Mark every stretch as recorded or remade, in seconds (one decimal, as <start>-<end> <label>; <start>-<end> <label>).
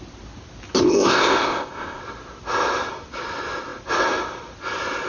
0.0-0.8 recorded; 0.8-2.0 remade; 2.0-5.1 recorded